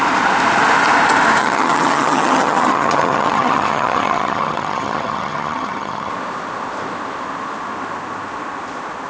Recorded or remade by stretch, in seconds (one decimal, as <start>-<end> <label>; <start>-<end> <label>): 0.0-1.4 recorded; 1.4-6.1 remade; 6.1-9.1 recorded